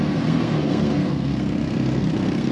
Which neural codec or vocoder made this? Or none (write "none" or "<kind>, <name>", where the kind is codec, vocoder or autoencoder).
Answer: codec, SNAC